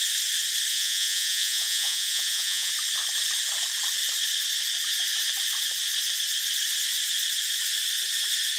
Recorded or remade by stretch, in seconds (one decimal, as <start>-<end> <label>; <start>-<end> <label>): 0.0-0.7 recorded; 0.7-2.7 remade; 2.7-8.6 recorded